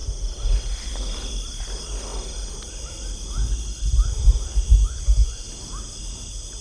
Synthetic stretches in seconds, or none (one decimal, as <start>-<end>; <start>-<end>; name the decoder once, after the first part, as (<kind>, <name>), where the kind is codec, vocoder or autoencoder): 4.7-5.4 (vocoder, Vocos)

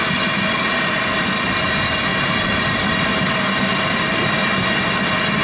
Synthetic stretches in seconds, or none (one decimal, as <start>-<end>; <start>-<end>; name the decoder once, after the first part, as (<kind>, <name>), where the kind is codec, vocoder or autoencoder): none